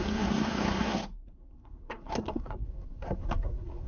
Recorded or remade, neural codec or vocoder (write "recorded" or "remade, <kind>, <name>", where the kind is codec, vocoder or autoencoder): remade, codec, SNAC